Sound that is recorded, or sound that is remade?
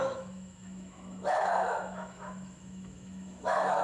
remade